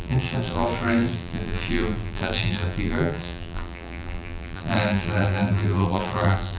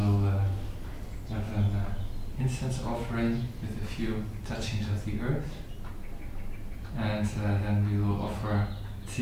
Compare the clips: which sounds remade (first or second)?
first